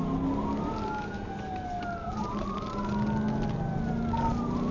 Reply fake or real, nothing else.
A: real